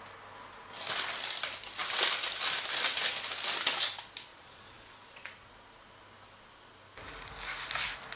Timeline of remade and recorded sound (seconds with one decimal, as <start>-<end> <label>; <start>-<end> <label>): 0.0-4.3 recorded; 4.3-5.5 remade; 5.5-8.2 recorded